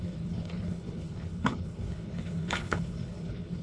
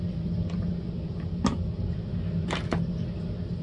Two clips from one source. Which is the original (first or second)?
second